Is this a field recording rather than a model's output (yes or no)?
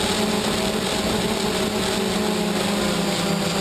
yes